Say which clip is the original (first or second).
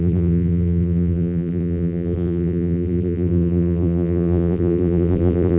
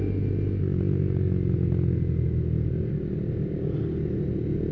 second